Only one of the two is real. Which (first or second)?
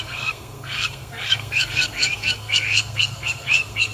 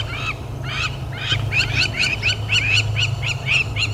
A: second